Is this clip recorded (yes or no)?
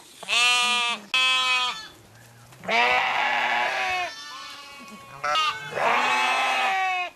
yes